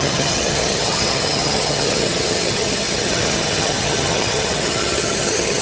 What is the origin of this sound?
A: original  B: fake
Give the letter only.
B